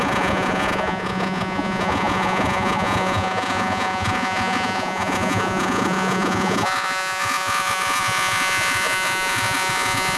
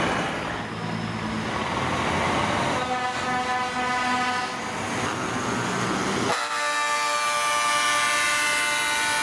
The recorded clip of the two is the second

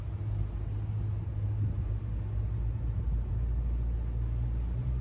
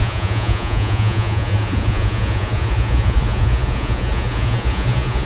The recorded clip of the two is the first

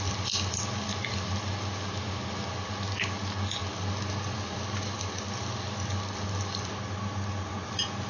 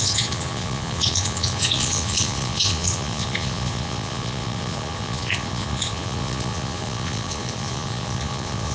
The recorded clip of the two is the first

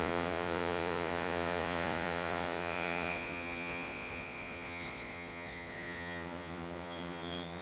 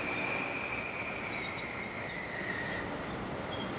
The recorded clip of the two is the second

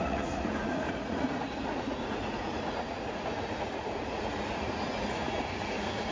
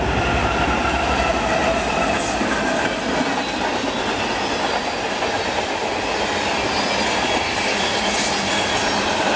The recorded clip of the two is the second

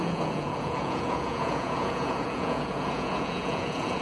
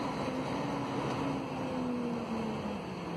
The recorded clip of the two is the second